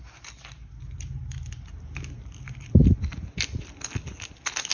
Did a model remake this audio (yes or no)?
no